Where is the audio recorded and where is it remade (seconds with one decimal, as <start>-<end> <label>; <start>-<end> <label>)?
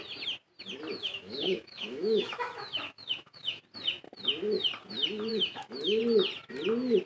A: 0.0-0.9 recorded; 0.9-3.6 remade; 3.6-5.3 recorded; 5.3-6.0 remade; 6.0-7.1 recorded